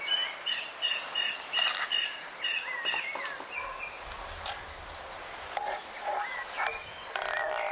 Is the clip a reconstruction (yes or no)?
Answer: no